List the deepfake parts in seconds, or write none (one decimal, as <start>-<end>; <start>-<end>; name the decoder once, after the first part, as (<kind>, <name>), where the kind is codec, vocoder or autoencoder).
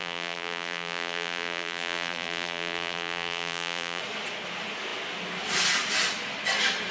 0.0-4.0 (vocoder, BigVGAN v2)